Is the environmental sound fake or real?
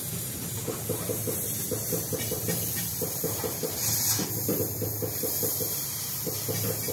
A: real